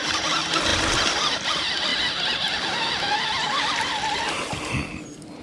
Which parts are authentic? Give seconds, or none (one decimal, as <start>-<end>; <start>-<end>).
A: 0.0-5.4